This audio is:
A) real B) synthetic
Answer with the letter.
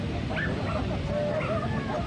A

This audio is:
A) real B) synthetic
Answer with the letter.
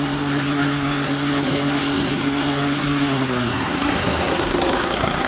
B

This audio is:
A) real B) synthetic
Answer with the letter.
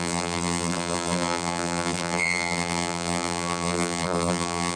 B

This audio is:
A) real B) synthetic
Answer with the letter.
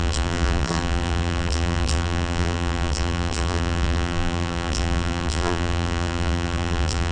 B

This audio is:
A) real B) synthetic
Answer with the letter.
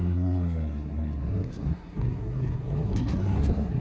B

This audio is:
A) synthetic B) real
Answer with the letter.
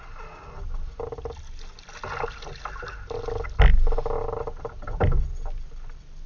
B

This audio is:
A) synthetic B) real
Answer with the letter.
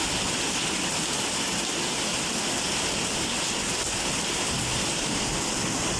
B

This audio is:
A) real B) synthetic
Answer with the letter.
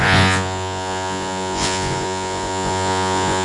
B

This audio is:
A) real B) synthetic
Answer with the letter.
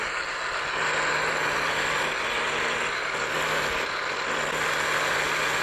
A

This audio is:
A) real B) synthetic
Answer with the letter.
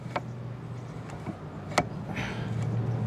A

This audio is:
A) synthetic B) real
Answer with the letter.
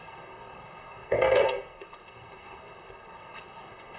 A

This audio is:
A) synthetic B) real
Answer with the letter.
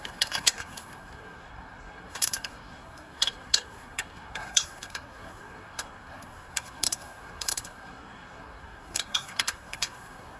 A